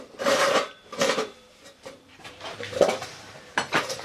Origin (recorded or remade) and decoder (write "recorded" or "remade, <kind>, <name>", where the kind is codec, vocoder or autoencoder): remade, vocoder, BigVGAN v2